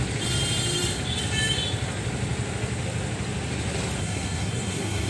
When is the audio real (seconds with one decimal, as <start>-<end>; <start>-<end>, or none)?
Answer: 0.0-4.0